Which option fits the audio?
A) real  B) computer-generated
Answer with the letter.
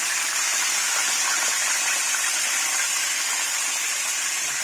A